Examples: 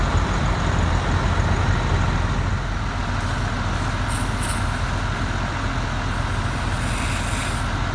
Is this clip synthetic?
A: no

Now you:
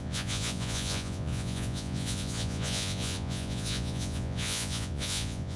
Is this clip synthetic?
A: yes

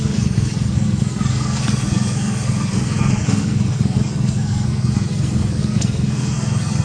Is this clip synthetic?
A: yes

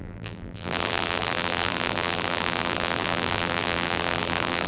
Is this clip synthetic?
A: yes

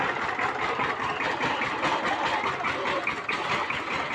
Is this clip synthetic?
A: no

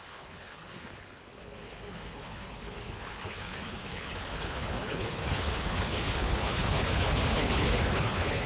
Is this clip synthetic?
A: yes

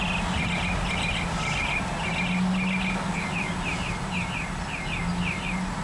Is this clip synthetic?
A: no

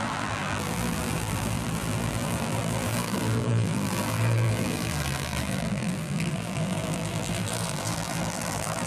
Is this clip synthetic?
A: yes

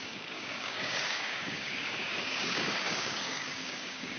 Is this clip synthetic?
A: yes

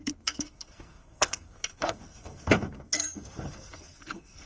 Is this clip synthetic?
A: yes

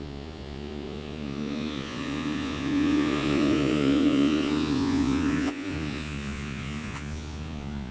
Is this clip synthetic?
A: yes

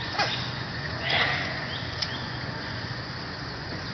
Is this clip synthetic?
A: yes